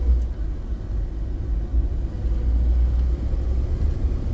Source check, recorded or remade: recorded